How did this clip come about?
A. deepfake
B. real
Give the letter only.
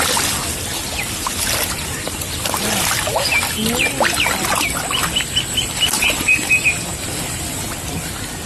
B